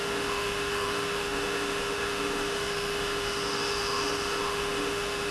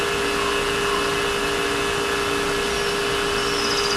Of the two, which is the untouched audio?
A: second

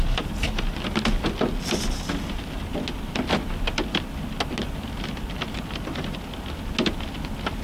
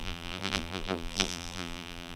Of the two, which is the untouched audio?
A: first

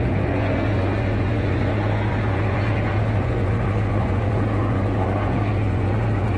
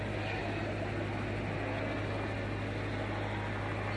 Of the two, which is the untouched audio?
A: second